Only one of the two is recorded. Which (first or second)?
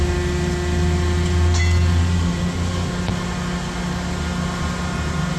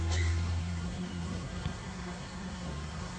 first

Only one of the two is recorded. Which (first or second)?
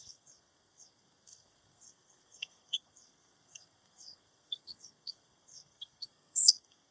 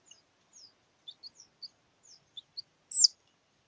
second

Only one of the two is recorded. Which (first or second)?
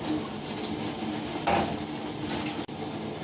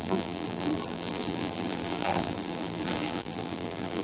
first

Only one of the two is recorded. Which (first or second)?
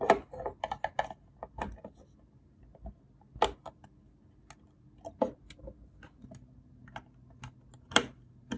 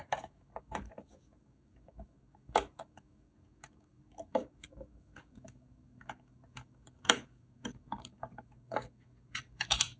first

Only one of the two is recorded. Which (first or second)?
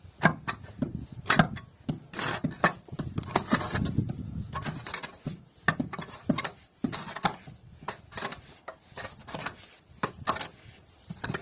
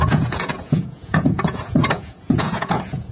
first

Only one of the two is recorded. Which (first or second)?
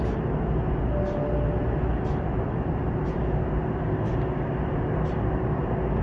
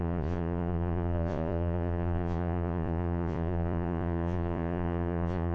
first